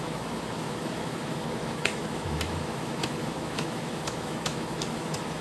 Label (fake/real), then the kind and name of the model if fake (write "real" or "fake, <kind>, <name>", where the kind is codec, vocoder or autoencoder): fake, autoencoder, DAC-VAE